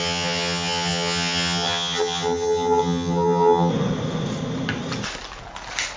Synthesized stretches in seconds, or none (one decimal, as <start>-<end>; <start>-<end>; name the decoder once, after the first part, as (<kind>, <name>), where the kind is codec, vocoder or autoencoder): 0.0-3.7 (vocoder, HiFi-GAN)